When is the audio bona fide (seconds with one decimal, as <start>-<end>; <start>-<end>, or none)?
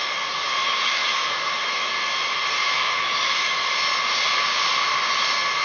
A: 0.0-0.6; 1.9-2.6; 3.7-5.6